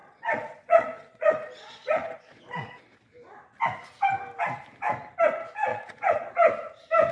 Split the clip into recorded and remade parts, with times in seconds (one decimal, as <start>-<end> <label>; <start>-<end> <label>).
0.0-2.8 remade; 2.8-5.7 recorded; 5.7-6.3 remade; 6.3-7.1 recorded